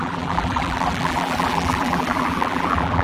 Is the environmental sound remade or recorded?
remade